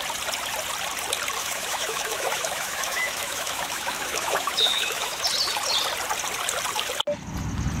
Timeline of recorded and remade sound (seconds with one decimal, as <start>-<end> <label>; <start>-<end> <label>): 0.0-1.4 recorded; 1.4-5.2 remade; 5.2-7.8 recorded